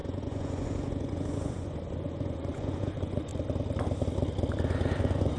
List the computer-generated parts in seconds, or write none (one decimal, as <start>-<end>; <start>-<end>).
0.0-3.3; 5.0-5.4